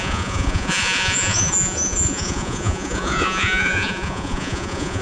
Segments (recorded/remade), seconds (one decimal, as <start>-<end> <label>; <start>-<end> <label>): 0.0-5.0 remade